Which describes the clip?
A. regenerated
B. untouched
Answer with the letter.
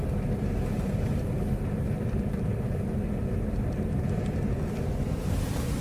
B